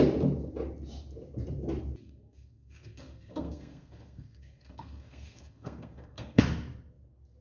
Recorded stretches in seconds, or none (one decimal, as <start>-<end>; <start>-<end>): 0.0-2.0; 6.4-7.4